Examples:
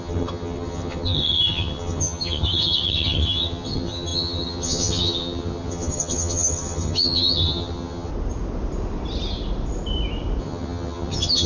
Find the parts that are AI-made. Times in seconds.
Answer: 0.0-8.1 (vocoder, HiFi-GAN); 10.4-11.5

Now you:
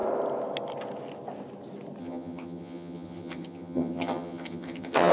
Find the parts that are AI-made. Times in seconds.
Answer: 2.0-5.1 (vocoder, HiFi-GAN)

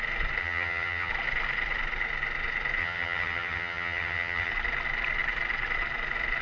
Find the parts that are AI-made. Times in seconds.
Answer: 0.4-1.1 (vocoder, HiFi-GAN); 2.8-4.5

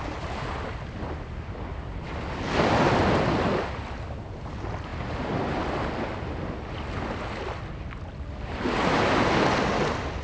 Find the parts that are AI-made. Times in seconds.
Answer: none

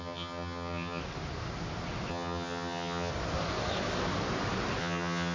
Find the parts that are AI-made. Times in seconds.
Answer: 0.0-1.0 (vocoder, HiFi-GAN); 2.1-3.1; 4.8-5.3